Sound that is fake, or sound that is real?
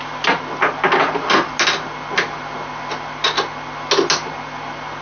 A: real